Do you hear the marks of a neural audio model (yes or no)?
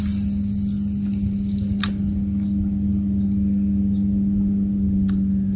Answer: no